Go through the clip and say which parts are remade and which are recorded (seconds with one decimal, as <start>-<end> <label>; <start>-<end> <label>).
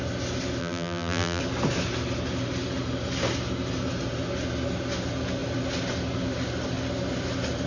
0.0-0.6 recorded; 0.6-1.4 remade; 1.4-7.7 recorded